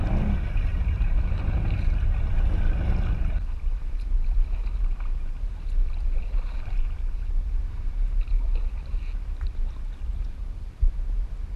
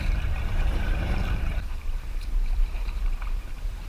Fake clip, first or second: second